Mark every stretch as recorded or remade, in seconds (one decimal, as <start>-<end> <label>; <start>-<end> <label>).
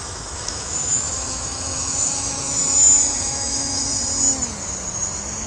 0.0-2.6 remade; 2.6-3.3 recorded; 3.3-4.0 remade; 4.0-5.5 recorded